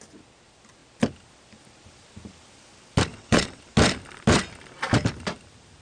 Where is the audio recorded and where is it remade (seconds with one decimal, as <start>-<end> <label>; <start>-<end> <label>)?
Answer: 0.0-3.1 recorded; 3.1-3.6 remade; 3.6-5.8 recorded